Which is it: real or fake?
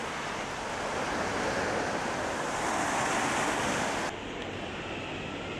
real